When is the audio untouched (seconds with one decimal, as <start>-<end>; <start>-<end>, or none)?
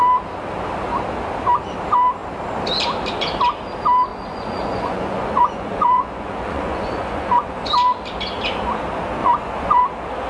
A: 0.0-4.1; 7.7-9.2; 9.8-10.3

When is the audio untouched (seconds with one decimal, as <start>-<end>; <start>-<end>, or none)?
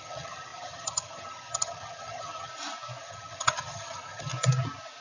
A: 2.5-3.0; 4.3-5.0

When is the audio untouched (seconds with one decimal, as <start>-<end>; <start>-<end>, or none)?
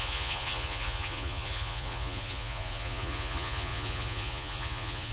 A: none